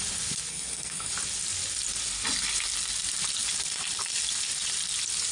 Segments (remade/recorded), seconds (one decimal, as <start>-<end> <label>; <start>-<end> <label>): 0.0-0.5 recorded; 0.5-1.1 remade; 1.1-5.3 recorded